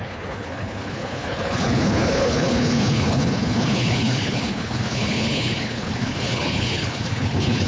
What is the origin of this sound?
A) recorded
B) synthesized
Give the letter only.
B